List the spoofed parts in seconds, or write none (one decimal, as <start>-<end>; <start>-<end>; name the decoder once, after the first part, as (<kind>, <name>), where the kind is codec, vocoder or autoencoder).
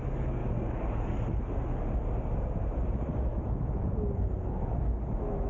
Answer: 0.0-0.4 (autoencoder, DAC-VAE); 2.9-5.5